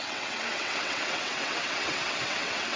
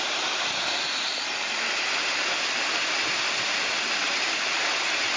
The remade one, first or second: first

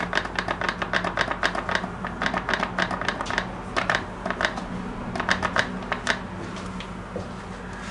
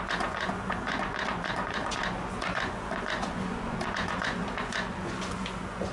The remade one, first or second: second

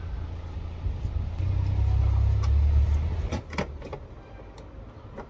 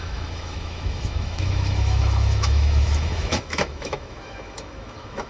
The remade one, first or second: second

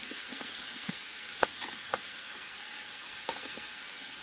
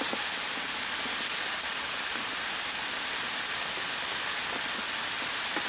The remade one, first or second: first